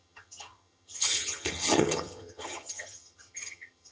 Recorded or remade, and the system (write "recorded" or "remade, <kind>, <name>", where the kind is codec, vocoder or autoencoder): remade, vocoder, HiFi-GAN